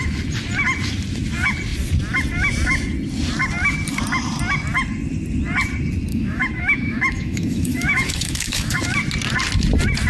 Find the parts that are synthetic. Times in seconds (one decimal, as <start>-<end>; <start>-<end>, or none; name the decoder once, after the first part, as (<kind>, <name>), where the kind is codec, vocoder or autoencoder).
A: 6.1-8.8 (autoencoder, DAC-VAE)